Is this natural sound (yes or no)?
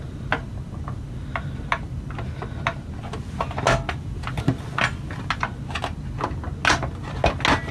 yes